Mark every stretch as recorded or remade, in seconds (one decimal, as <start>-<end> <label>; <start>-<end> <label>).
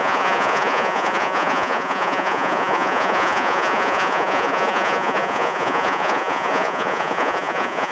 0.0-7.9 remade